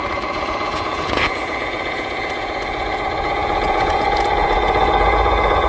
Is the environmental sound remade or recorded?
remade